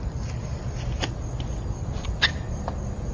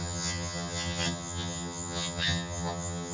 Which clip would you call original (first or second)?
first